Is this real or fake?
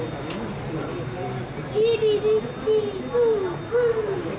real